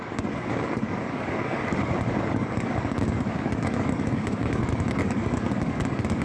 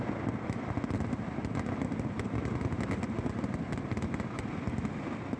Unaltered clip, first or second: second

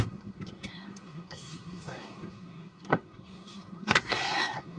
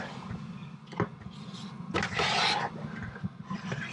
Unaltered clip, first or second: second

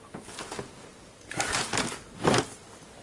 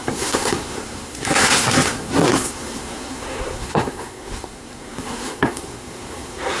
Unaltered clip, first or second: first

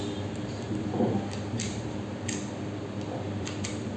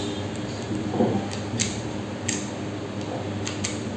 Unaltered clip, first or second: second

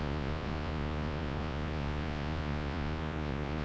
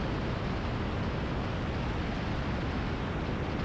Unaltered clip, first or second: second